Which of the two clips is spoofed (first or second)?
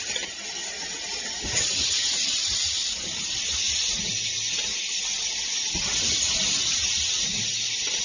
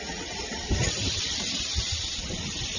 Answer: second